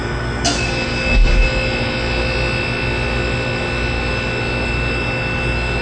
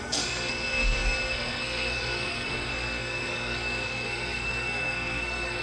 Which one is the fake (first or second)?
second